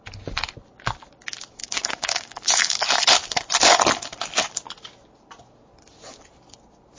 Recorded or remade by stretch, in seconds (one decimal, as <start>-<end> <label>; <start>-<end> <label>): 0.0-1.6 recorded; 1.6-2.8 remade; 2.8-7.0 recorded